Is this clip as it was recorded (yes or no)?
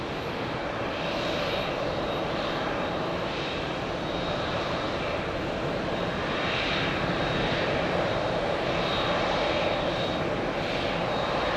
yes